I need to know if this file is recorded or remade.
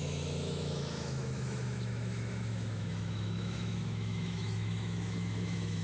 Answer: remade